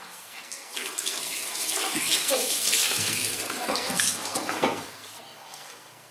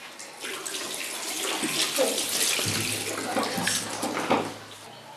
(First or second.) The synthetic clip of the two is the first